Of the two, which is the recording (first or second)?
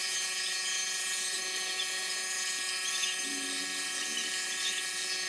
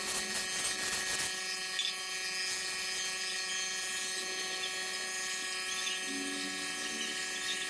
second